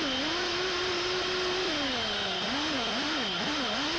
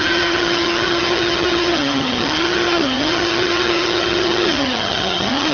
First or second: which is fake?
second